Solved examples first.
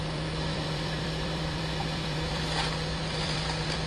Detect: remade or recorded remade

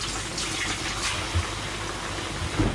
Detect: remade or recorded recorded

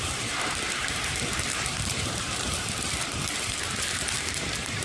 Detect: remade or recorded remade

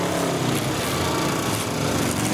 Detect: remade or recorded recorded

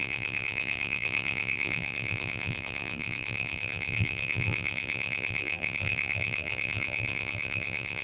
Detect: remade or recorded remade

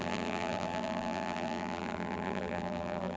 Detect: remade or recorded remade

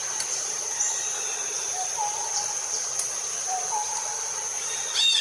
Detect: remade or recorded remade